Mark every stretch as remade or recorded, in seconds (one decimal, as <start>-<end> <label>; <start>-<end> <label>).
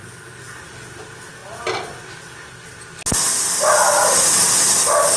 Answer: 0.0-5.2 recorded